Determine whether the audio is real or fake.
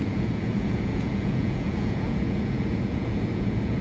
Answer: fake